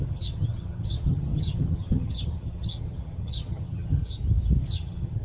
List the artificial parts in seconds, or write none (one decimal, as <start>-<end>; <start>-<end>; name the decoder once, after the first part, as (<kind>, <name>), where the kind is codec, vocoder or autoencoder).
0.0-4.0 (vocoder, HiFi-GAN); 4.6-5.2